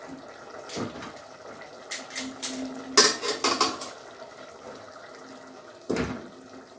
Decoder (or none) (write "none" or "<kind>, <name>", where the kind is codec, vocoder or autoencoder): none